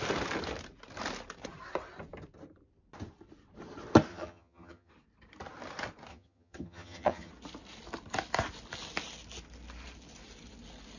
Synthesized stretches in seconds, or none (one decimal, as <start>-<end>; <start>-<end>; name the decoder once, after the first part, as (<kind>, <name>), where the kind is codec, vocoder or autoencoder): 4.1-4.9 (vocoder, HiFi-GAN); 6.1-7.3